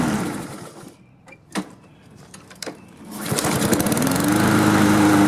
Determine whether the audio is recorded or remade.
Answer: remade